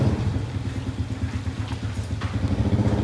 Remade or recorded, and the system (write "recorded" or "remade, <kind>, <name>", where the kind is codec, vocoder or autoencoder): recorded